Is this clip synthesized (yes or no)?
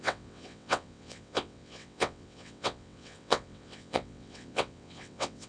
yes